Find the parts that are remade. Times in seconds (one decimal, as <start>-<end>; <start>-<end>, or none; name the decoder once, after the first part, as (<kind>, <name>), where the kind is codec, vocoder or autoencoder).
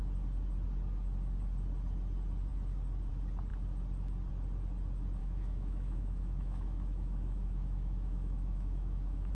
5.2-9.3 (autoencoder, DAC-VAE)